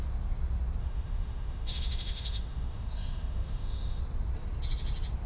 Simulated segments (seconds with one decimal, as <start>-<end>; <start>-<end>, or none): 0.8-4.0